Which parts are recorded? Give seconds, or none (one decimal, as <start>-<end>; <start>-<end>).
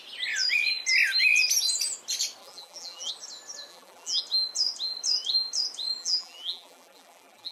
0.0-2.4; 3.1-3.7; 4.2-6.0